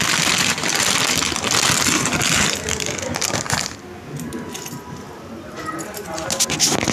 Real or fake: real